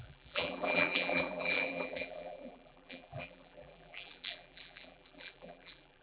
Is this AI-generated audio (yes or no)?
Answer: yes